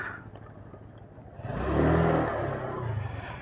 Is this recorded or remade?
recorded